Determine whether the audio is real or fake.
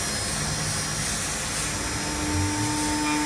real